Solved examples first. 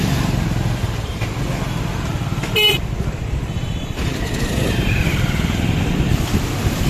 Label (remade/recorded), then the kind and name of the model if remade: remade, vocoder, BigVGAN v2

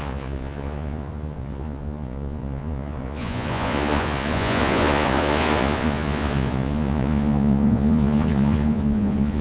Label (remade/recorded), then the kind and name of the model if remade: remade, vocoder, Vocos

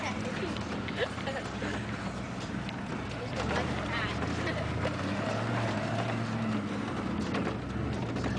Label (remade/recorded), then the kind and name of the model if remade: recorded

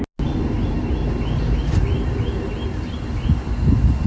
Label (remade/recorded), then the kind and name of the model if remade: recorded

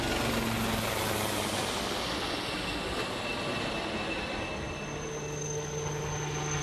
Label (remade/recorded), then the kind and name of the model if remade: recorded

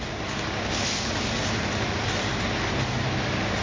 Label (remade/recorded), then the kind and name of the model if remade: recorded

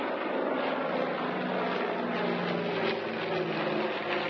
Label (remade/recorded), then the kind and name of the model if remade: recorded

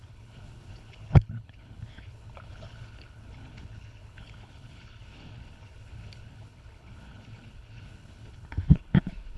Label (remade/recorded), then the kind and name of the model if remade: remade, codec, HILCodec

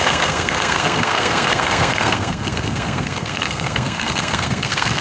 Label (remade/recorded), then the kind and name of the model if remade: remade, codec, SNAC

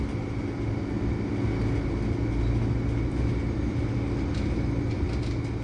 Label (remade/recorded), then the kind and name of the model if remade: recorded